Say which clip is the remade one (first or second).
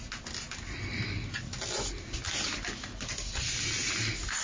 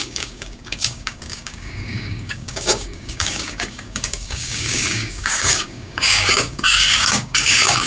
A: second